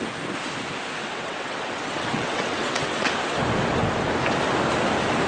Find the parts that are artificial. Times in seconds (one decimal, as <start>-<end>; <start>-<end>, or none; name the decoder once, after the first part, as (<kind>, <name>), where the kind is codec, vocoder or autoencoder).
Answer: 1.0-3.1 (vocoder, WaveNeXt)